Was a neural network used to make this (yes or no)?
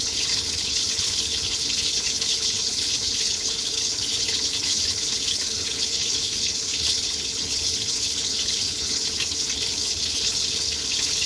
yes